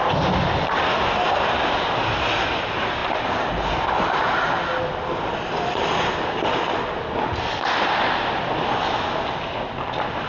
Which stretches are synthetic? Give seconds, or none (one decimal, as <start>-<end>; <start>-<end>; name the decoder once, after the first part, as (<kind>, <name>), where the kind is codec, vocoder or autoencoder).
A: none